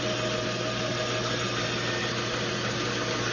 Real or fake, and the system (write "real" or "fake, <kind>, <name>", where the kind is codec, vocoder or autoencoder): real